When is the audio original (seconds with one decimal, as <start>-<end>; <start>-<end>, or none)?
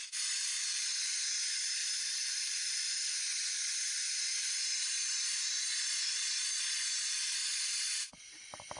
0.0-1.8; 2.9-8.8